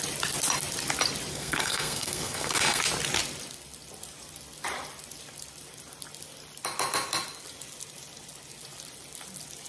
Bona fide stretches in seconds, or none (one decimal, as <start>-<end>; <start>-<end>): 0.0-1.3; 2.8-9.7